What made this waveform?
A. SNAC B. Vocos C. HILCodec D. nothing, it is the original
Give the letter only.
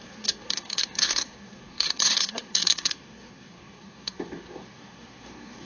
A